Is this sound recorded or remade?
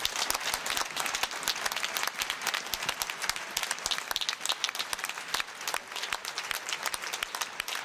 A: recorded